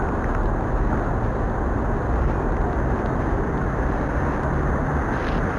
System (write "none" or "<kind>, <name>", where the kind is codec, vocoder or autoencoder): none